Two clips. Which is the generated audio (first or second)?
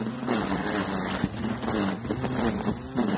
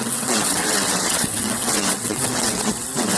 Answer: second